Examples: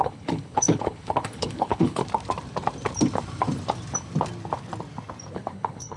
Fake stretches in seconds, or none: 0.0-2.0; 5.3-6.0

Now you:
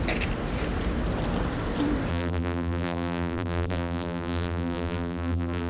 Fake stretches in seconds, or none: 2.1-5.7

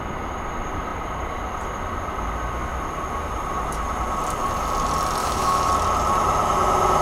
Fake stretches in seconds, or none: 5.2-5.7